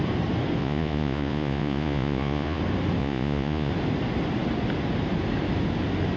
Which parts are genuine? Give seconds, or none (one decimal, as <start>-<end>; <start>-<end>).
0.0-0.6; 2.6-3.0; 3.7-6.2